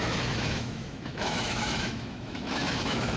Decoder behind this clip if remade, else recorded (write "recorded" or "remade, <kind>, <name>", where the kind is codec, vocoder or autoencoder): remade, autoencoder, DAC-VAE